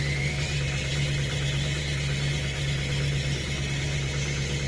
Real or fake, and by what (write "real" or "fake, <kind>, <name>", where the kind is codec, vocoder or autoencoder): real